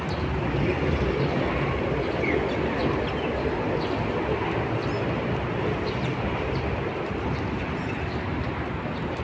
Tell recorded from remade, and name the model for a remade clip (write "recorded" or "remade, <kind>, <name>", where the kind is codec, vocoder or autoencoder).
recorded